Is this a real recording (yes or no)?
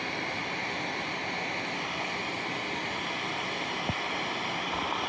yes